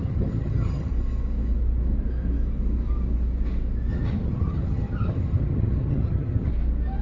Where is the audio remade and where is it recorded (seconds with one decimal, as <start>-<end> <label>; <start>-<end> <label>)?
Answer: 0.0-0.9 remade; 0.9-3.9 recorded; 3.9-6.5 remade; 6.5-7.0 recorded